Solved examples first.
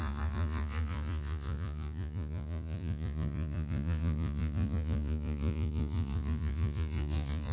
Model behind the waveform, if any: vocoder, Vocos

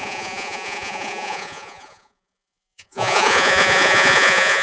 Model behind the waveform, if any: vocoder, Vocos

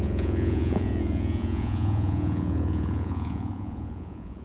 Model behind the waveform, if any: vocoder, Vocos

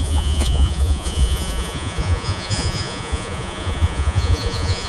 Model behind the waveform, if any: vocoder, Vocos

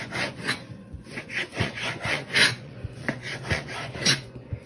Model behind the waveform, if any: vocoder, Vocos